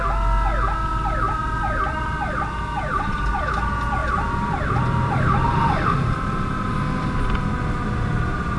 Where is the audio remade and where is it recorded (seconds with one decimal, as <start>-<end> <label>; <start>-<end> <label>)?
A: 0.0-0.9 recorded; 0.9-2.4 remade; 2.4-4.0 recorded; 4.0-6.5 remade; 6.5-8.6 recorded